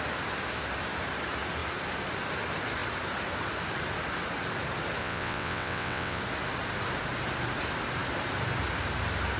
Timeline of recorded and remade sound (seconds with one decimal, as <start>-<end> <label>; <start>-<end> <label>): 0.0-5.0 recorded; 5.0-6.2 remade; 6.2-9.4 recorded